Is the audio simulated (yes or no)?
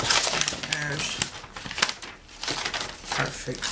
no